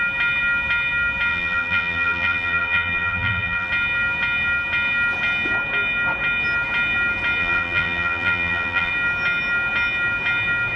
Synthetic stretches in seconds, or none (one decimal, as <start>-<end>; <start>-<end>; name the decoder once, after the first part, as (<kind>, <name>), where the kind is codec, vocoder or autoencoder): 1.3-3.7 (vocoder, BigVGAN v2); 7.4-8.9